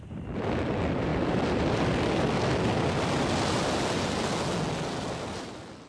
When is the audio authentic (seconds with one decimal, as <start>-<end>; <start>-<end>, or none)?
0.0-5.9